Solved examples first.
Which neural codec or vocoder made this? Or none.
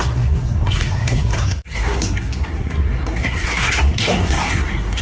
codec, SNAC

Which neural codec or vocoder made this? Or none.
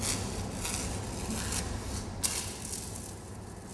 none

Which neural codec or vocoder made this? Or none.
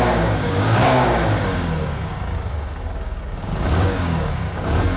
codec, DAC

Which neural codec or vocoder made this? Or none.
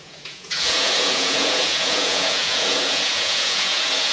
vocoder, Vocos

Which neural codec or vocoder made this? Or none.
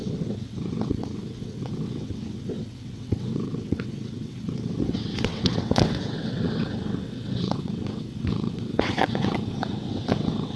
vocoder, WaveNeXt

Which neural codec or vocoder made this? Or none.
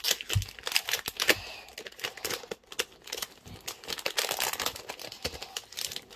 none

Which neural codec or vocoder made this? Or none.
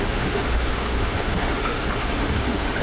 autoencoder, DAC-VAE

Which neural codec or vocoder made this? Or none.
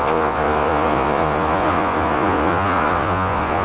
vocoder, Vocos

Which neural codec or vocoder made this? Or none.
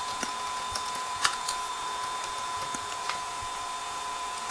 vocoder, Vocos